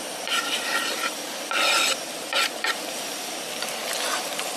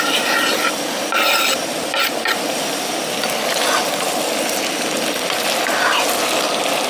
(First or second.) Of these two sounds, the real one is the second